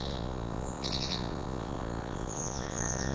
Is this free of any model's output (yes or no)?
no